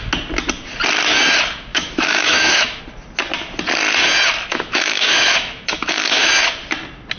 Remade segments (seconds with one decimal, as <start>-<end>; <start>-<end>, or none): 1.7-2.8; 4.5-6.3